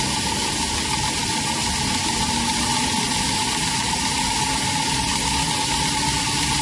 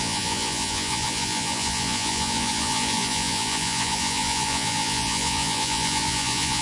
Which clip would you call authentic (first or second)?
first